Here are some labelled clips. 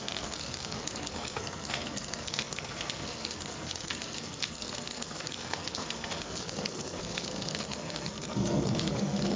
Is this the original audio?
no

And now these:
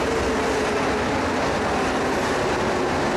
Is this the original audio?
yes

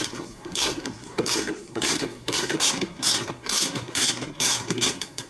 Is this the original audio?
no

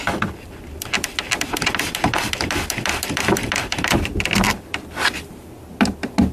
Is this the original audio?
yes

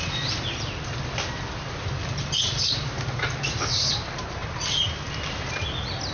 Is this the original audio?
yes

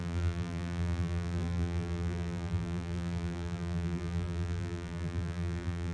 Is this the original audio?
no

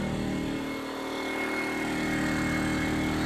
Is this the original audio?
yes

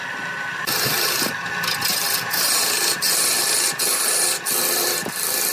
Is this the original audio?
yes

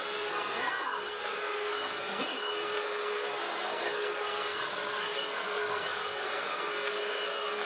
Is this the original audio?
no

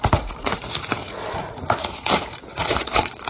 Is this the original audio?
no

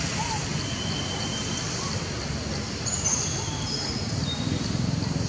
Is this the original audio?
yes